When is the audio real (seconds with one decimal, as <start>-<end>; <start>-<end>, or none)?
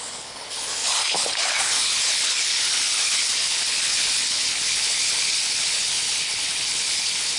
none